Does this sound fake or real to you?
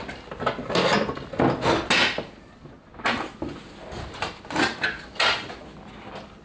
real